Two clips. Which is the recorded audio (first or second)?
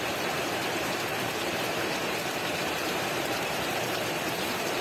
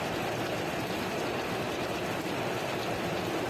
second